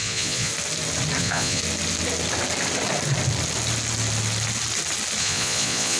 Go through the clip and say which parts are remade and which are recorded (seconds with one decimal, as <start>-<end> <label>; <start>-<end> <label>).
0.0-0.5 remade; 0.5-1.2 recorded; 1.2-1.6 remade; 1.6-5.2 recorded; 5.2-6.0 remade